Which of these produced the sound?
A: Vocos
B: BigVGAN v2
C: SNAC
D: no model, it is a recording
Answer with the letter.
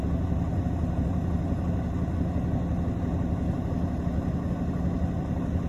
D